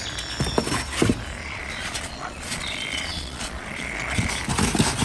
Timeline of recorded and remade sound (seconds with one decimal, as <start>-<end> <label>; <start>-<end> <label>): 0.0-1.4 recorded; 1.4-4.3 remade; 4.3-5.0 recorded